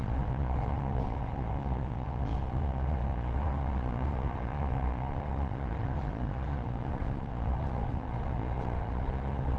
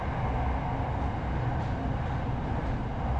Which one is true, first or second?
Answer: second